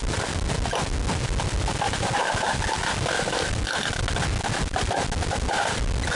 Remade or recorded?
recorded